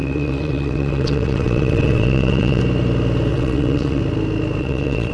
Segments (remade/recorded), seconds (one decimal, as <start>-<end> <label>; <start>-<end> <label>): 0.0-2.6 remade; 2.6-3.3 recorded; 3.3-4.0 remade; 4.0-4.6 recorded; 4.6-5.1 remade